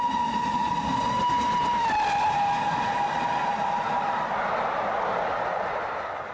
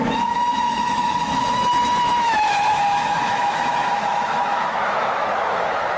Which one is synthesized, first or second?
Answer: second